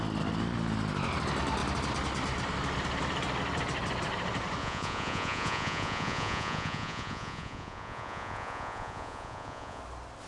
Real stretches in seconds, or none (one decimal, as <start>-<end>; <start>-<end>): 0.0-4.6; 9.8-10.3